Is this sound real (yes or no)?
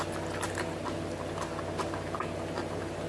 yes